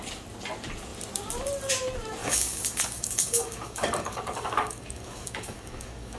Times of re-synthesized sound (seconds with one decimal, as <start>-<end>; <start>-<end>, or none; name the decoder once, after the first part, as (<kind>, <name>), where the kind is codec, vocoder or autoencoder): 2.2-6.2 (codec, DAC)